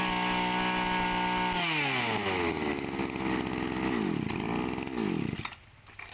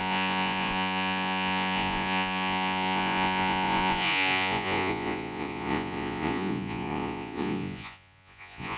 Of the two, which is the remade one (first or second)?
second